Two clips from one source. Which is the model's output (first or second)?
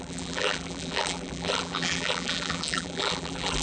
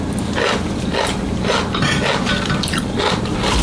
first